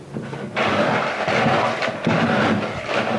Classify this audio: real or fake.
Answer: real